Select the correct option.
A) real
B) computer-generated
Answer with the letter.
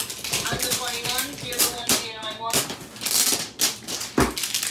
A